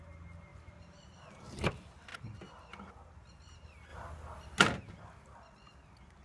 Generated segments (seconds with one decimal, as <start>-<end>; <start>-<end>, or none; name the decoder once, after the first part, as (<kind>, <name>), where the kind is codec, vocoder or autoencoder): none

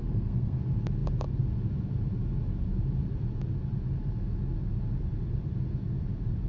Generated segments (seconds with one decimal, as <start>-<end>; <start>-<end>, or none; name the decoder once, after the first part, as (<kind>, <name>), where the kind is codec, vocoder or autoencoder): 0.0-0.6 (codec, SNAC)

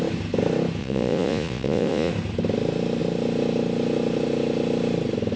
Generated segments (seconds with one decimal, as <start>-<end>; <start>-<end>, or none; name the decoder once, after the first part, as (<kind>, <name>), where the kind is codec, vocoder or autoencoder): 0.8-2.1 (vocoder, Vocos)

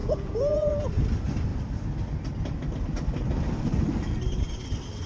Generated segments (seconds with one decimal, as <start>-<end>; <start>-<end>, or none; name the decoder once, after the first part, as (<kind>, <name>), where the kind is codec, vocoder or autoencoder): 0.0-0.7 (vocoder, Vocos)

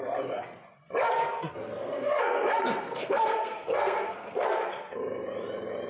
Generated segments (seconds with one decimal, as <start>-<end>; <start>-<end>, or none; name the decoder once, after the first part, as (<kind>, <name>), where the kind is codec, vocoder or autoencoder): 1.2-4.7 (codec, SNAC)

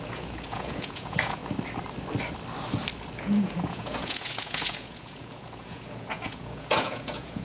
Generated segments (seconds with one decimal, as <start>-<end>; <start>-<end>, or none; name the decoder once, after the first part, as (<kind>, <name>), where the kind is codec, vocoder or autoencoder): 0.0-1.4 (vocoder, Vocos); 3.2-7.4

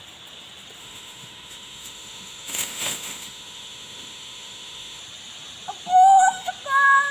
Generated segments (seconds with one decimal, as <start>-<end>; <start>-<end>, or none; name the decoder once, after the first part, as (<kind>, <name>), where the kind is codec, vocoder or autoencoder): 0.8-5.0 (autoencoder, DAC-VAE); 5.9-6.5

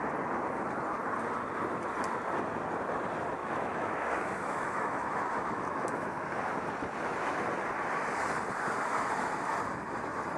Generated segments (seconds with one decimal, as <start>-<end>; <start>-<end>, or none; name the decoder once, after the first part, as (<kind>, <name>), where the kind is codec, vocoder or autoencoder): 3.4-6.2 (autoencoder, DAC-VAE)